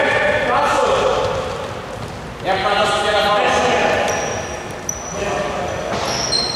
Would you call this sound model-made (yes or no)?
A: no